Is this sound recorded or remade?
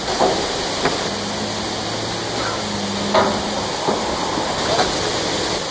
recorded